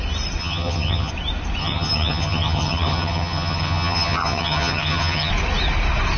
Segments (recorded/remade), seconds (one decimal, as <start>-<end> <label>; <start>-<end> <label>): 0.0-0.4 recorded; 0.4-1.1 remade; 1.1-1.6 recorded; 1.6-5.3 remade; 5.3-6.2 recorded

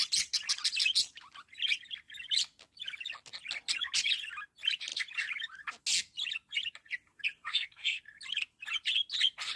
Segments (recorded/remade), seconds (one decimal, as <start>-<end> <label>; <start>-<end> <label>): 0.0-7.5 recorded; 7.5-8.0 remade; 8.0-9.6 recorded

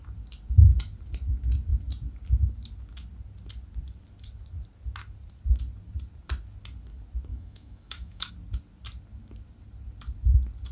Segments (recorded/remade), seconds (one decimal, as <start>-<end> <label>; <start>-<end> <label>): 0.0-7.3 recorded; 7.3-8.3 remade; 8.3-10.7 recorded